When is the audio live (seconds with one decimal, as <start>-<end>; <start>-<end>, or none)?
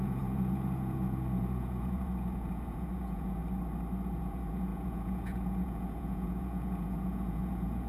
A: 3.4-4.2